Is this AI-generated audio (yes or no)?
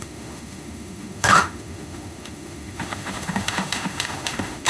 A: yes